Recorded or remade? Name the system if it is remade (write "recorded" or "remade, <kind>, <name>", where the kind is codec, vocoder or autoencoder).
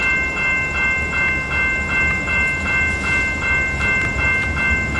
recorded